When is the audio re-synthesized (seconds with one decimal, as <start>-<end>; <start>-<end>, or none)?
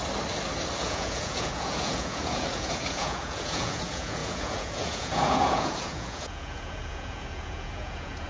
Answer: 0.8-8.3